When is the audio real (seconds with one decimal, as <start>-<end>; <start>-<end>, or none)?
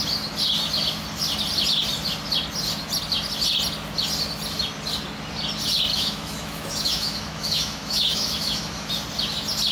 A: 0.0-5.9; 8.9-9.7